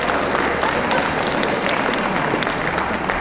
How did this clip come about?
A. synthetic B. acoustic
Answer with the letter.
B